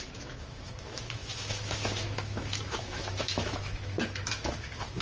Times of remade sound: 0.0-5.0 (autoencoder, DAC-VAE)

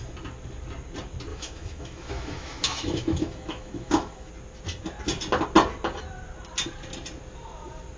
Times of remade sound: 1.3-4.3 (autoencoder, DAC-VAE)